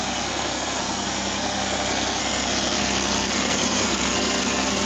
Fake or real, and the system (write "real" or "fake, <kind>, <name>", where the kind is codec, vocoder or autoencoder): fake, codec, SNAC